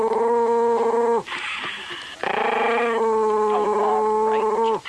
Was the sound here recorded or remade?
recorded